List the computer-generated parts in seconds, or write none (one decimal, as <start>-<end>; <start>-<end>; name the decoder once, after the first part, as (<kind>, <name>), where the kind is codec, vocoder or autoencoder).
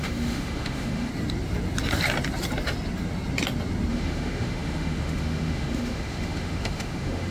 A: 0.0-1.1 (autoencoder, DAC-VAE); 3.9-7.3